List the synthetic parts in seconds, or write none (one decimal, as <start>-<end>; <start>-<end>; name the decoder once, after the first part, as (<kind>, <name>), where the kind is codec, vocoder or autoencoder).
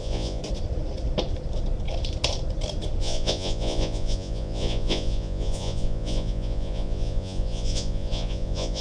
0.0-0.4 (vocoder, Vocos); 3.0-8.8